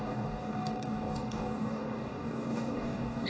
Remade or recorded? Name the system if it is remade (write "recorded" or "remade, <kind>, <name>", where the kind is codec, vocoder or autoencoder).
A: remade, codec, DAC